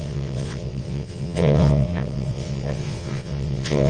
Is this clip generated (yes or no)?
yes